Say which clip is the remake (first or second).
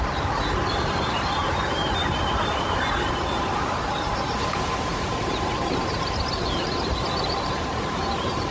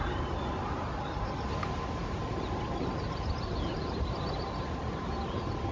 first